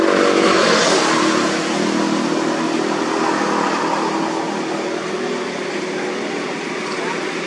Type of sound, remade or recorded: recorded